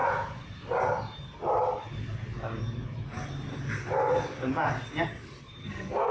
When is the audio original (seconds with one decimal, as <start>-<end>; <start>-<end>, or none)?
0.0-5.6